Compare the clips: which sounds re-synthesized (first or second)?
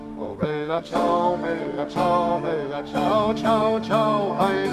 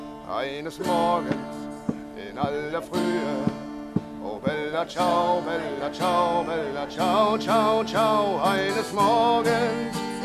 first